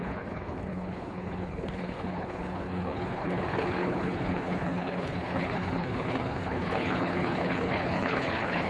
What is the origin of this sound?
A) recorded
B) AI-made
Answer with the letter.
B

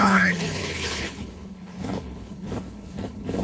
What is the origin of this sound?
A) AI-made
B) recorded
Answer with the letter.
A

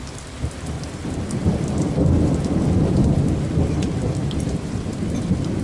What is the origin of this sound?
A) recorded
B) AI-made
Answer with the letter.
A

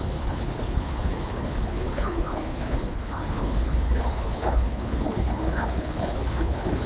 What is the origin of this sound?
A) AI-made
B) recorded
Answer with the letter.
A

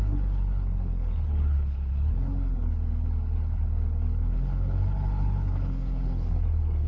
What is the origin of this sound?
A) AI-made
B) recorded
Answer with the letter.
A